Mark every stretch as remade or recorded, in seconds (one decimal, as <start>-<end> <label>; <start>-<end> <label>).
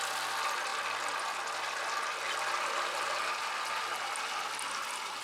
0.0-5.2 recorded